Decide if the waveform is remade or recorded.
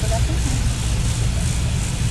recorded